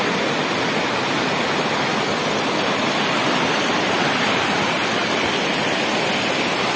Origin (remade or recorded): recorded